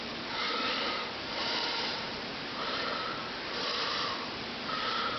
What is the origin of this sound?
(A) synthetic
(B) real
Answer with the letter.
A